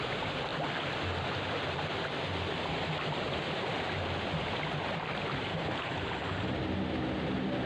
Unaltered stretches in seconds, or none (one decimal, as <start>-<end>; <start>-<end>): 0.0-7.7